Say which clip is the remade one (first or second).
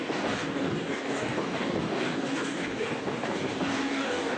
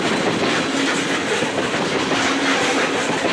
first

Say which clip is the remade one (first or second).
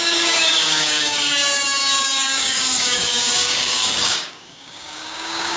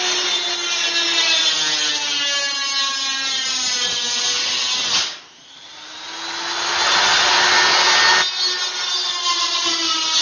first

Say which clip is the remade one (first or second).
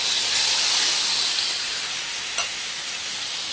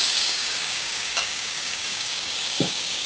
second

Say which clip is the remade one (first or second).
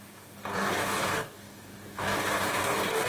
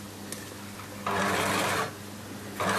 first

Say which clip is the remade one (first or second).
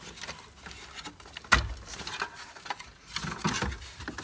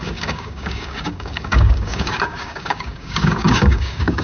second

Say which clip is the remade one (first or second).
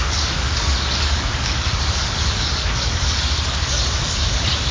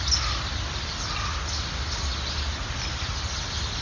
first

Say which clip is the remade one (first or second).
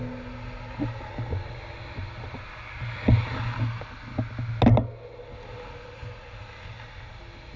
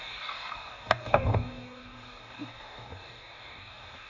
second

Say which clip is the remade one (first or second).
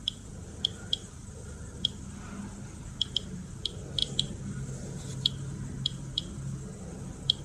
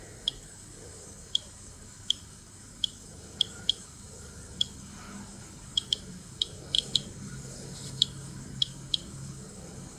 second